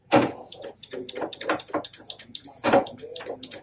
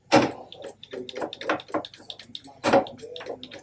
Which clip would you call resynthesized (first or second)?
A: first